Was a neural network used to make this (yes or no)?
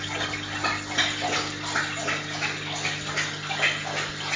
no